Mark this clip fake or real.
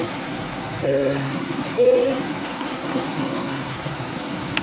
fake